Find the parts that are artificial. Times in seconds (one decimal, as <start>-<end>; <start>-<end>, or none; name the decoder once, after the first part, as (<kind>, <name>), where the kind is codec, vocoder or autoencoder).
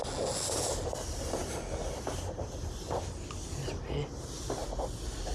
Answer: none